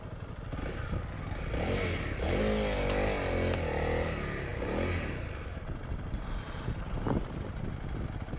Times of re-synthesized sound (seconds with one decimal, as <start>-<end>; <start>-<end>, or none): none